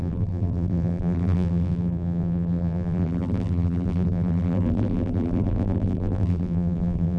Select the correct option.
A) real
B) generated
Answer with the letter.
B